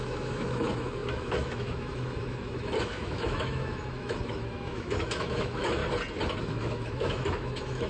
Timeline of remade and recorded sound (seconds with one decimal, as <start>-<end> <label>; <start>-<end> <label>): 0.0-5.8 remade; 5.8-6.4 recorded; 6.4-7.9 remade